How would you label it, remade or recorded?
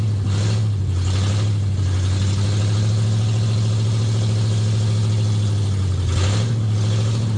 recorded